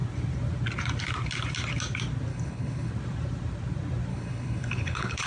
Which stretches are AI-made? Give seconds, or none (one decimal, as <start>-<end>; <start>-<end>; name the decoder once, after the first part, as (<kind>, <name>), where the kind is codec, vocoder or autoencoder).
2.3-2.9 (codec, HILCodec); 4.1-5.3